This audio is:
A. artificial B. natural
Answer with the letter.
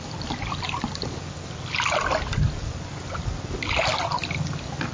B